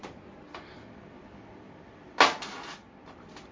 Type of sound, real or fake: real